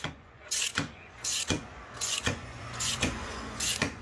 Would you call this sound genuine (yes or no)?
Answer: no